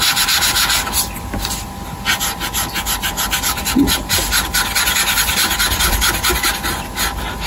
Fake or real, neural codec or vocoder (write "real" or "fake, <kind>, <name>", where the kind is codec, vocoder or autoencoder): fake, vocoder, BigVGAN v2